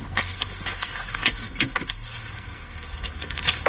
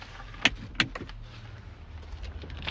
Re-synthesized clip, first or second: first